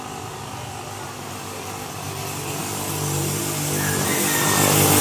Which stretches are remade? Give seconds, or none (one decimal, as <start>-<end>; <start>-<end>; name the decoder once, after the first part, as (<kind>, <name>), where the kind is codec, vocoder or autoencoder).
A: 2.6-3.4 (vocoder, BigVGAN v2)